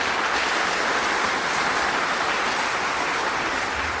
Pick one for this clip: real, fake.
fake